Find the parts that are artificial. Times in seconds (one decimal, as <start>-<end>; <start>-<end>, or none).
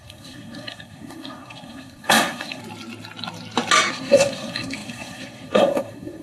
0.0-2.6; 3.9-6.2